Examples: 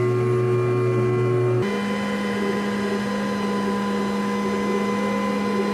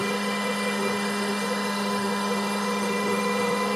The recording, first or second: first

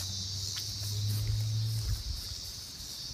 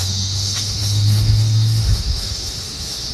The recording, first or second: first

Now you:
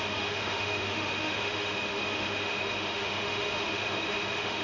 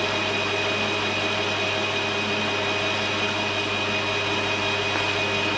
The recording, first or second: second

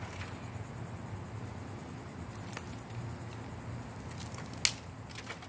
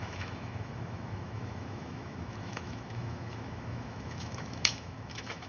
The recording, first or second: first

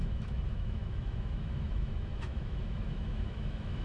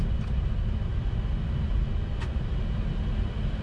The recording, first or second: second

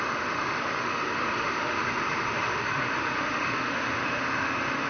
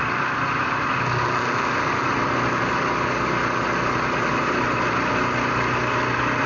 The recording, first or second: second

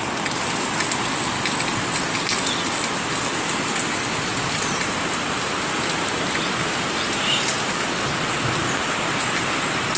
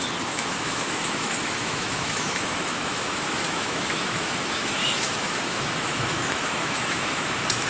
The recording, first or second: first